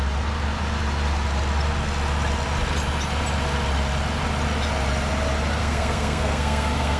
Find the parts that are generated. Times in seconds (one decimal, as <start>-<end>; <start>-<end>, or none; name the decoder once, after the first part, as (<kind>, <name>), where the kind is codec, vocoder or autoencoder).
5.6-7.0 (codec, SNAC)